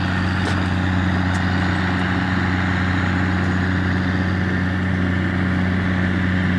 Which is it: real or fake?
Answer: real